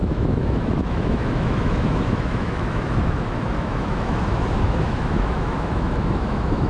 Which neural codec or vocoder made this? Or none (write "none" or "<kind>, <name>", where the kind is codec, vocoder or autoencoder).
autoencoder, DAC-VAE